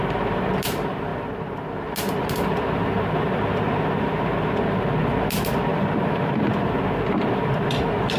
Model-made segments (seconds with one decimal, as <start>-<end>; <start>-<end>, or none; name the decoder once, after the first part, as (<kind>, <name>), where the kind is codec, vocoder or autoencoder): none